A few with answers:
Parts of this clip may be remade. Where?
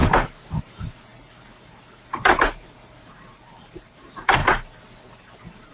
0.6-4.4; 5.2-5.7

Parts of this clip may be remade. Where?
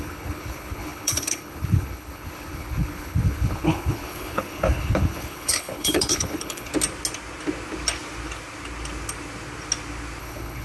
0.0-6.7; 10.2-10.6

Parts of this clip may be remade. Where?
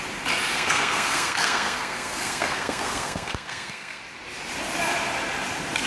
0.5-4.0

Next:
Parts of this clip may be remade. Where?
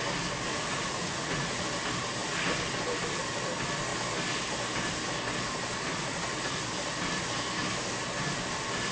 0.5-1.6; 5.9-6.6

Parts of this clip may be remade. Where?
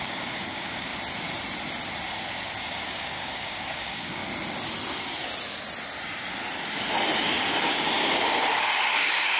0.0-0.9; 2.6-4.2; 7.5-9.4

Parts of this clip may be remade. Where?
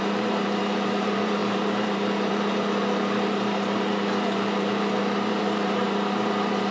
0.0-6.7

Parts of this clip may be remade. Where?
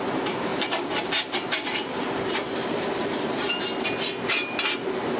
0.5-3.6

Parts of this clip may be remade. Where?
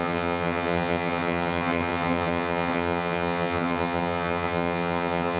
0.0-5.4